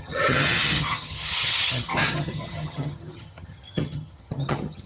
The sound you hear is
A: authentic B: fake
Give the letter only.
B